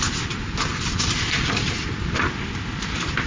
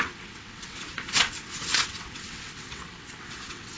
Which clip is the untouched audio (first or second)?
first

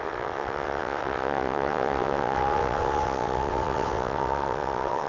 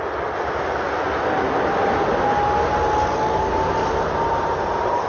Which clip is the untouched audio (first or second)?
second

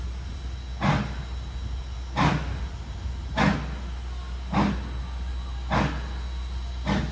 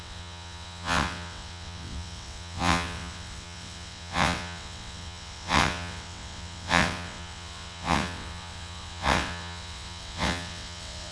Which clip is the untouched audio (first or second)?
first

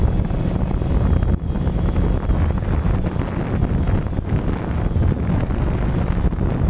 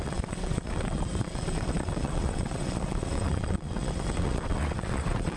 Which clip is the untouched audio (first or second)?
first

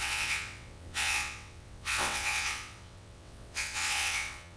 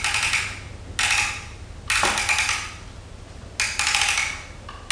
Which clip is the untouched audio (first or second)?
second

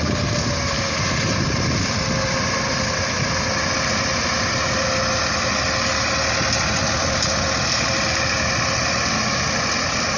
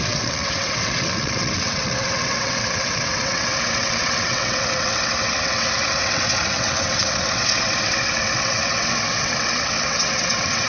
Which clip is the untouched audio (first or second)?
first